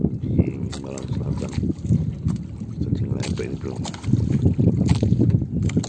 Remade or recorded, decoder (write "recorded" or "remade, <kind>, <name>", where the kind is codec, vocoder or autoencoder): recorded